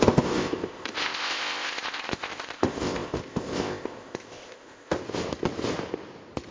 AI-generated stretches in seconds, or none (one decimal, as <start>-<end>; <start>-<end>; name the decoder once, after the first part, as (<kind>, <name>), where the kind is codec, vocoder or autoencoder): 0.0-5.0 (codec, ZipCodec)